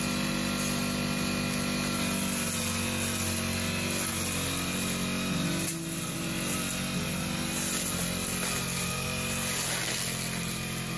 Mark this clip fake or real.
real